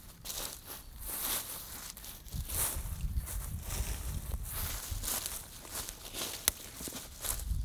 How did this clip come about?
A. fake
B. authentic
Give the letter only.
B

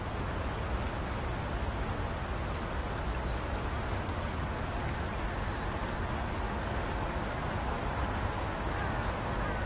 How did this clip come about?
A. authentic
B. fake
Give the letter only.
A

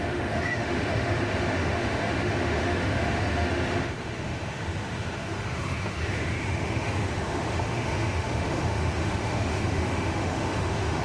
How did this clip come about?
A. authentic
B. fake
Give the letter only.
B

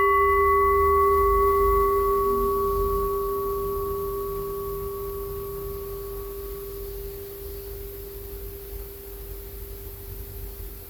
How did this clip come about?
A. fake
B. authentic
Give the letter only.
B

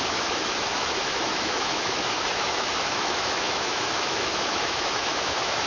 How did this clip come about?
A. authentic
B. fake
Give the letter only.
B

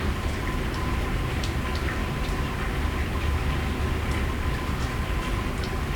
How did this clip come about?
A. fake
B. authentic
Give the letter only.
B